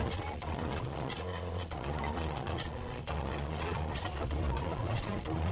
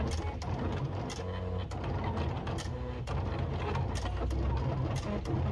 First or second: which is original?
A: second